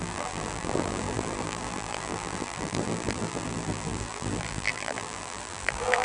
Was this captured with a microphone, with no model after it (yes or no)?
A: no